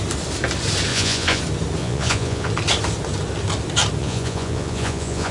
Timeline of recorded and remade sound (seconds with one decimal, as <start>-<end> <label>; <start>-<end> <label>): 0.0-0.9 recorded; 0.9-1.4 remade; 1.4-1.8 recorded; 1.8-2.5 remade; 2.5-4.0 recorded; 4.0-5.3 remade